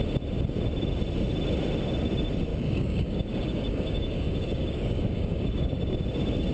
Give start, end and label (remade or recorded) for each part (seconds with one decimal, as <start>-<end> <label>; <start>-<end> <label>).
0.0-2.5 recorded; 2.5-6.0 remade; 6.0-6.5 recorded